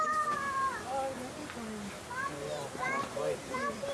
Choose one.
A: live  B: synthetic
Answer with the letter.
B